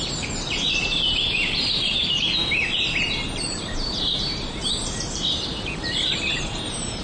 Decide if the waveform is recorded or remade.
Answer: remade